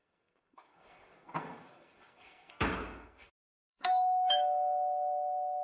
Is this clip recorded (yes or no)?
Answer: no